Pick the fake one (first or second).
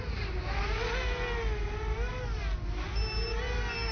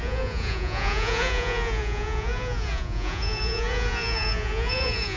second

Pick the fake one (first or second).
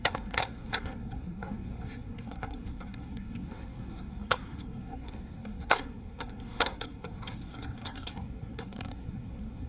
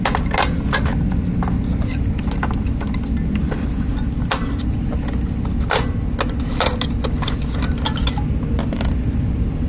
first